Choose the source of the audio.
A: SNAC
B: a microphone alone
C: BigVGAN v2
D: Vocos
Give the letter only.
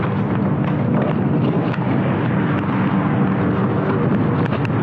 B